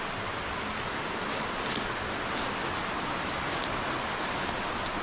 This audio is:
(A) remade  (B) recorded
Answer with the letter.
B